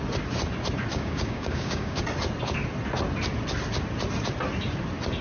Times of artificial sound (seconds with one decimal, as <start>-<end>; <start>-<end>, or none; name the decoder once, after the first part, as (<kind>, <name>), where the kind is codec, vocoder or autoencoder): 0.9-2.0 (codec, DAC)